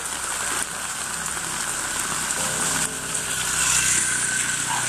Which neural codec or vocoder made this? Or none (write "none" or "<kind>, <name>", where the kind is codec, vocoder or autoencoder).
none